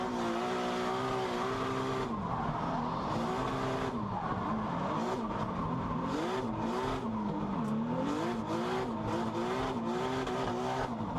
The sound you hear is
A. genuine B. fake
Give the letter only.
A